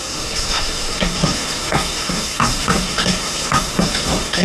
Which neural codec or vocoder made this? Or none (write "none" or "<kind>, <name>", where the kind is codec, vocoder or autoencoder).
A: codec, SNAC